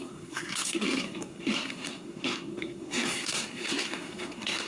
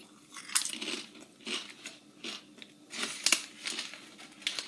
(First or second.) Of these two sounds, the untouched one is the second